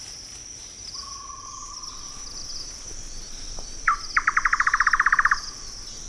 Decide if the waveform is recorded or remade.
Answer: recorded